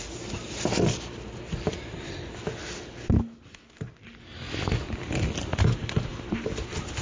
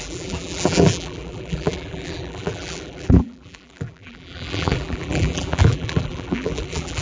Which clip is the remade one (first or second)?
second